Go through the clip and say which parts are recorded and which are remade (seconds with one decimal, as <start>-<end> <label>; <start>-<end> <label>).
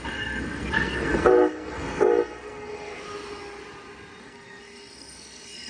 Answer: 0.0-2.9 remade; 2.9-4.2 recorded; 4.2-5.7 remade